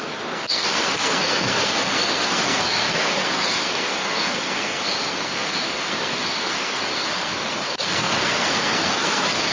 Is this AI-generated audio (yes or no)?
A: yes